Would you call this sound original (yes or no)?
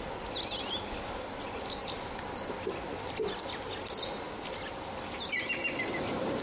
yes